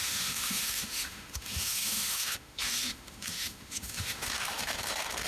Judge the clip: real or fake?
fake